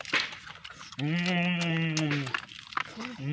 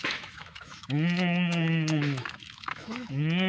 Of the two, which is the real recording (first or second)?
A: first